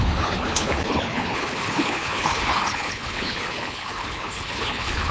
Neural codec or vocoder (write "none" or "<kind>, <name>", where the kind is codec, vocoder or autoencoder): codec, HILCodec